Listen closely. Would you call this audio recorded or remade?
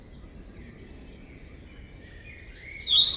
recorded